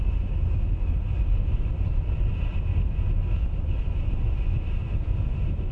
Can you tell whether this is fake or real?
real